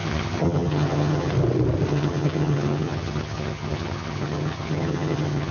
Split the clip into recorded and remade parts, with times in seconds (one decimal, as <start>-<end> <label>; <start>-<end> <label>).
0.0-1.3 remade; 1.3-1.9 recorded; 1.9-5.5 remade